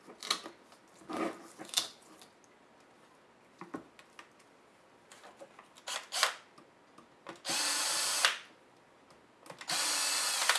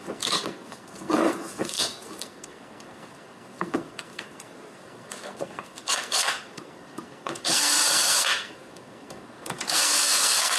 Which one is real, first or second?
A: first